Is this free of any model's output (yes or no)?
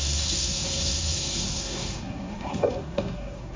no